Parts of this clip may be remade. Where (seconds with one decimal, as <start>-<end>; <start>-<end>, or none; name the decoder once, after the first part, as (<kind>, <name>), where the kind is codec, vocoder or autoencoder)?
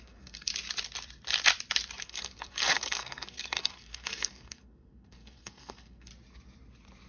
0.0-0.5 (codec, SNAC); 2.0-6.1